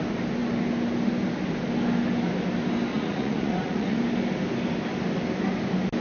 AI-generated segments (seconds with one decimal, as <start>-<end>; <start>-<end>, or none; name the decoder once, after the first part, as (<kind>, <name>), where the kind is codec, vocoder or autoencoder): 2.9-4.0 (vocoder, Vocos)